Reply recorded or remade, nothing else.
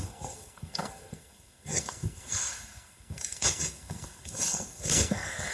remade